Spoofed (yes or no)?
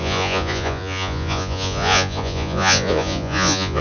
yes